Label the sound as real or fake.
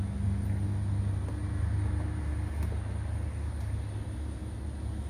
real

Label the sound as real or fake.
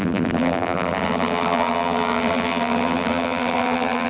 fake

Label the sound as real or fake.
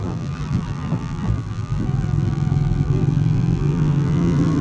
fake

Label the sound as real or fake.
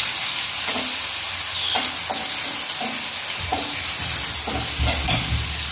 real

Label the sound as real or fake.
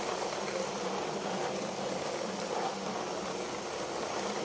real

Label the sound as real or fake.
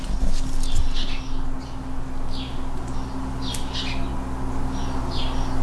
real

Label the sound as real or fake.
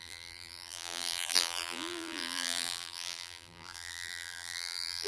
fake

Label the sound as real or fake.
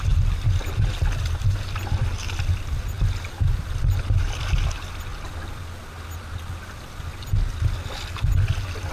real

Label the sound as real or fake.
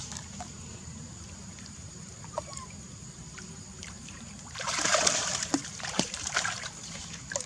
fake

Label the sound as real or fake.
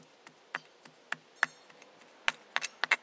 real